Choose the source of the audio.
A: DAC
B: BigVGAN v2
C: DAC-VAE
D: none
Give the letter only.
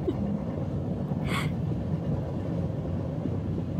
D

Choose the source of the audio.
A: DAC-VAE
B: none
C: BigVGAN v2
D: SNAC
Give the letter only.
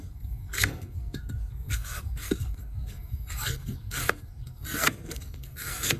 D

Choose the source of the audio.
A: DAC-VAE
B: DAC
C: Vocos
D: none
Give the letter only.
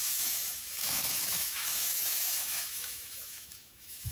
A